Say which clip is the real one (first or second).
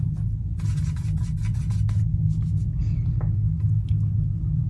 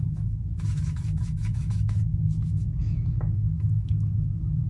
first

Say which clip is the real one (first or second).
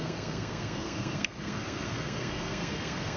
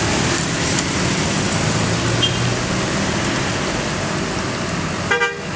second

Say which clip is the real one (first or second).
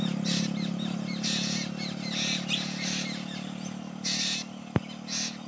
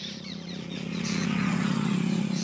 first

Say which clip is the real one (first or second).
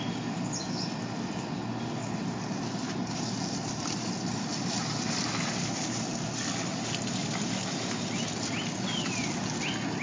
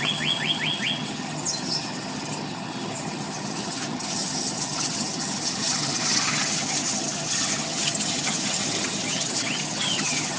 first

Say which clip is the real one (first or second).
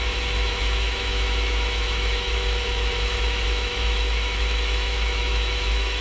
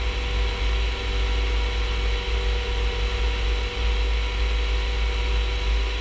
second